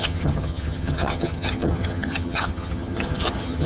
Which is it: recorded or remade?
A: remade